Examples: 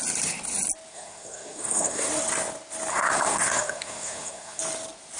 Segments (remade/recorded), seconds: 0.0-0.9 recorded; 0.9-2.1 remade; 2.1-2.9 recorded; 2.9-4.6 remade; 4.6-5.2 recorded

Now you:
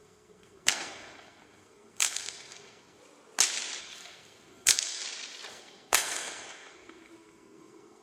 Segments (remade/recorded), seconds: 0.0-3.0 remade; 3.0-3.8 recorded; 3.8-5.0 remade; 5.0-5.5 recorded; 5.5-8.0 remade

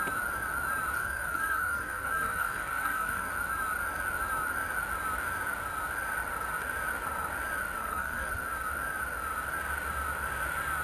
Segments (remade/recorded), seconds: 0.0-1.0 recorded; 1.0-3.3 remade; 3.3-7.8 recorded; 7.8-8.3 remade; 8.3-10.8 recorded

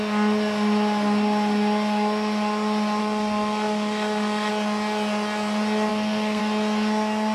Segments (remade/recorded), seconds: 0.0-3.0 recorded; 3.0-4.5 remade; 4.5-5.9 recorded; 5.9-6.4 remade; 6.4-7.3 recorded

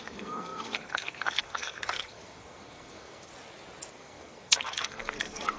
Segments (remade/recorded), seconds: 0.0-3.3 remade; 3.3-3.9 recorded; 3.9-5.6 remade

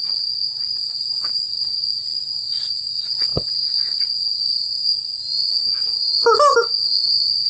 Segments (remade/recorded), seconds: 0.0-7.5 recorded

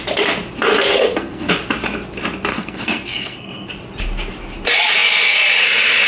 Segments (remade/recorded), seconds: 0.0-0.9 recorded; 0.9-1.5 remade; 1.5-2.5 recorded; 2.5-3.7 remade; 3.7-6.1 recorded

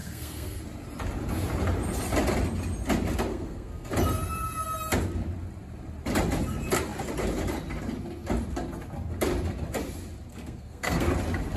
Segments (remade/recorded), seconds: 0.0-0.6 remade; 0.6-3.3 recorded; 3.3-3.9 remade; 3.9-10.3 recorded; 10.3-11.1 remade; 11.1-11.6 recorded